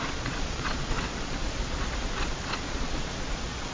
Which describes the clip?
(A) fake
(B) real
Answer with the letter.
A